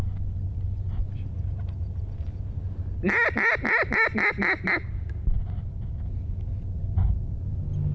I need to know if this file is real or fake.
real